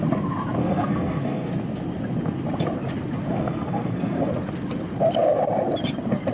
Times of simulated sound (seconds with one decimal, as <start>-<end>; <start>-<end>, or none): 0.6-1.5; 3.3-4.3